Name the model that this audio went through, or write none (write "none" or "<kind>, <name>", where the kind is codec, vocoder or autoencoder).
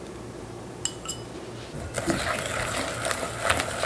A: none